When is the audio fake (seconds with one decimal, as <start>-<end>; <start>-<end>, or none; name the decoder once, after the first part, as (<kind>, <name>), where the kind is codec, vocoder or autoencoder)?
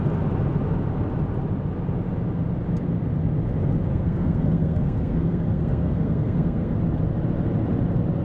3.9-6.8 (codec, SNAC)